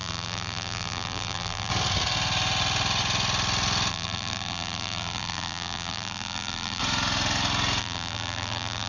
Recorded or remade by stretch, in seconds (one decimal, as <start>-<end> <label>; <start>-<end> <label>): 0.0-1.7 remade; 1.7-3.9 recorded; 3.9-6.8 remade; 6.8-7.8 recorded; 7.8-8.9 remade